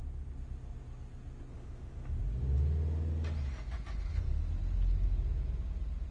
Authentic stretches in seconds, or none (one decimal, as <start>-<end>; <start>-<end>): 0.0-1.5; 2.2-6.1